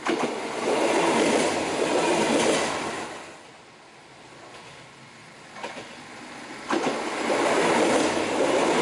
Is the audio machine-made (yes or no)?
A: no